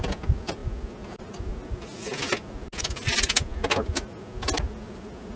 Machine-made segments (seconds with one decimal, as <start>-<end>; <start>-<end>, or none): none